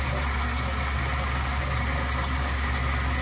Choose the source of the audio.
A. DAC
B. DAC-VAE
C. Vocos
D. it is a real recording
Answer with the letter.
D